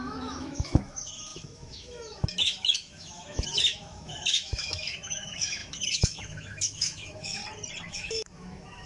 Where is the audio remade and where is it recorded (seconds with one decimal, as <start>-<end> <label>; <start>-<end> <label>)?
0.0-7.4 remade; 7.4-7.9 recorded; 7.9-8.9 remade